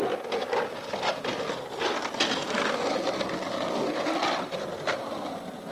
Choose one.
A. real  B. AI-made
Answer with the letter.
A